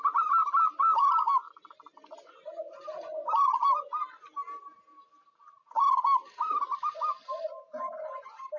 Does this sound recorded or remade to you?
recorded